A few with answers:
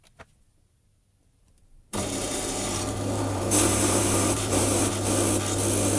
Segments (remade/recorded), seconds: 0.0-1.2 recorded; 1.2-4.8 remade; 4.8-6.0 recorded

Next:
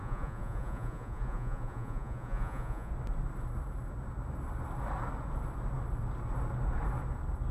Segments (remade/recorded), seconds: 0.0-2.9 remade; 2.9-7.5 recorded

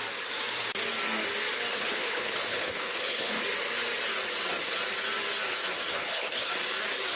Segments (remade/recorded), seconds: 0.0-1.7 recorded; 1.7-3.4 remade; 3.4-5.9 recorded; 5.9-6.5 remade; 6.5-7.2 recorded

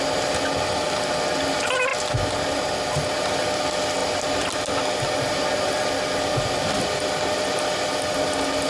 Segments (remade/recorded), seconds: 0.0-8.7 recorded

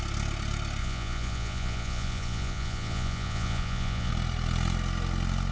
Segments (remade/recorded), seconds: 0.0-0.8 recorded; 0.8-4.1 remade; 4.1-5.5 recorded

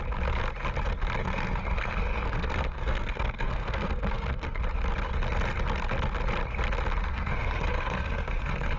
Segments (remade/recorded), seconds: 0.0-1.2 recorded; 1.2-4.6 remade; 4.6-7.1 recorded; 7.1-8.8 remade

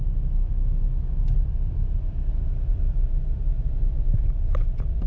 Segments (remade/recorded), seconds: 0.0-3.6 recorded; 3.6-5.1 remade